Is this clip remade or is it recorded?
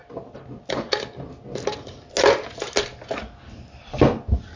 recorded